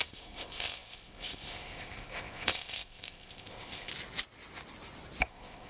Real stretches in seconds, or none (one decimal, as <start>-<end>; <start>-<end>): 3.9-5.3